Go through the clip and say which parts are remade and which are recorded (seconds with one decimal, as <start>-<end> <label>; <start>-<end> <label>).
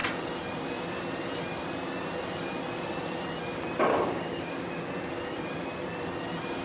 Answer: 0.0-3.9 recorded; 3.9-4.9 remade; 4.9-6.6 recorded